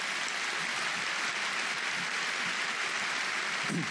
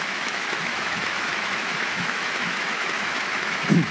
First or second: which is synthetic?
second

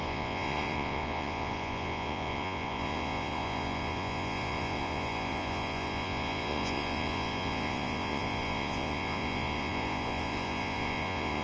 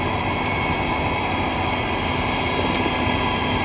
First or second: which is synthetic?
first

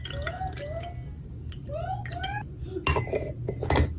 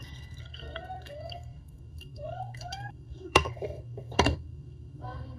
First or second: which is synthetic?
second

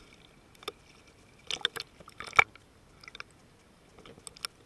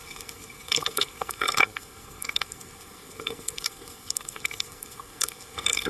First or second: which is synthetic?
second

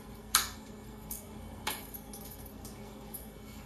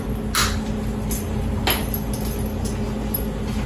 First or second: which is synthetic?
first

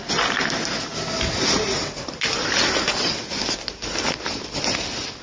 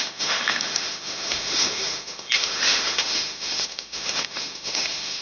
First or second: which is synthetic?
second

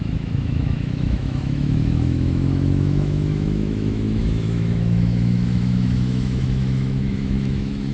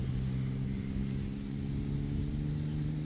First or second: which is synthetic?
first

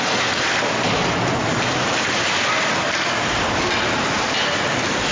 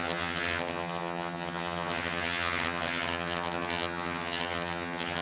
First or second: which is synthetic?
second